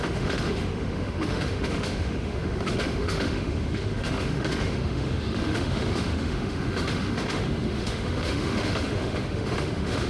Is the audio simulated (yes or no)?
yes